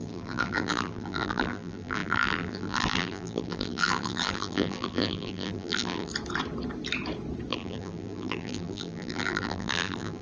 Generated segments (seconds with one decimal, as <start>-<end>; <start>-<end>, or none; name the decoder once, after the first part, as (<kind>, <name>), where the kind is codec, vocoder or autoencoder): 0.0-6.1 (vocoder, BigVGAN v2); 7.5-10.2